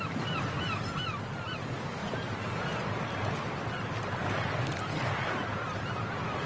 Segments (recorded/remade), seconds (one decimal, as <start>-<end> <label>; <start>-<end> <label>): 0.0-6.5 recorded